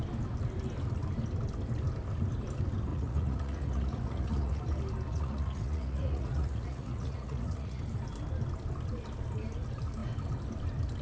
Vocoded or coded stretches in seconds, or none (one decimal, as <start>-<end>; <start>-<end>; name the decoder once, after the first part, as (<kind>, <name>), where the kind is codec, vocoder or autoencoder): 2.9-4.6 (vocoder, Vocos); 5.1-7.8